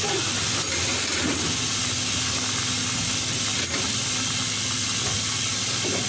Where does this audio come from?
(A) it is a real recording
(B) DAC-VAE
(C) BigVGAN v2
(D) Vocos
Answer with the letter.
A